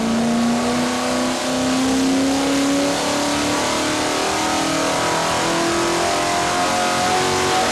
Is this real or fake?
real